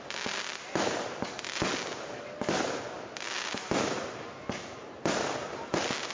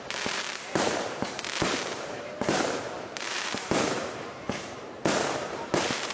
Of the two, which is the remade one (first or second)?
second